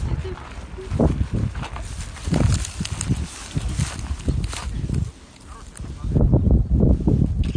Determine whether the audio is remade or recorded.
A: recorded